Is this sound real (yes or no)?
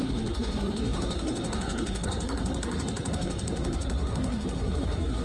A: no